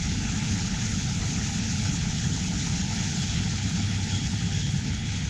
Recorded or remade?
remade